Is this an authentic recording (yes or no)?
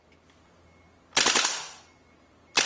yes